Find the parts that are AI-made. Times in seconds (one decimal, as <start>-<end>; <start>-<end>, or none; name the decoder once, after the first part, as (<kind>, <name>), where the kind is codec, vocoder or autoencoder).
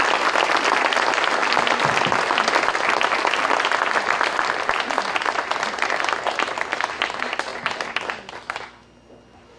none